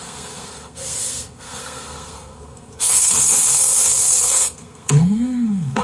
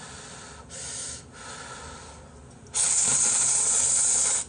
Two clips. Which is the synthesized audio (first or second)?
first